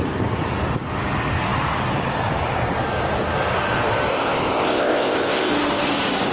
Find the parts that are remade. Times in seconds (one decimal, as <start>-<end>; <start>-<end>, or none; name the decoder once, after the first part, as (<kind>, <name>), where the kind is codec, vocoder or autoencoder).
4.1-5.5 (codec, ZipCodec)